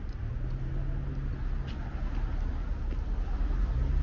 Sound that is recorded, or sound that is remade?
recorded